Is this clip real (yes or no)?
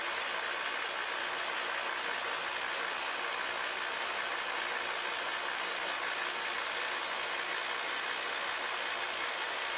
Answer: yes